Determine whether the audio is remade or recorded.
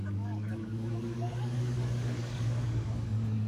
remade